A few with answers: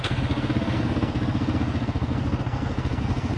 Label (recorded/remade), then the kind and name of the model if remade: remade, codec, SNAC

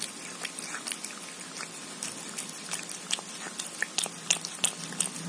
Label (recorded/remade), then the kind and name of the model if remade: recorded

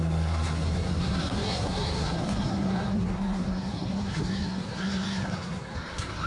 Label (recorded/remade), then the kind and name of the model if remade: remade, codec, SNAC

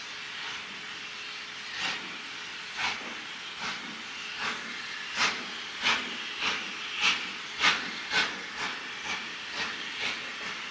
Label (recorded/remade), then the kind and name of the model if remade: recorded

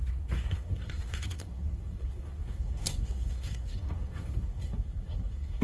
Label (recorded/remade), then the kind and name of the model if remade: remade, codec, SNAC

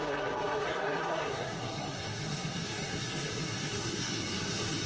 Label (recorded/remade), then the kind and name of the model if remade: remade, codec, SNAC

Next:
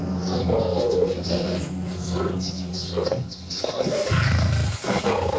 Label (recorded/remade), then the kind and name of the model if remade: remade, codec, SNAC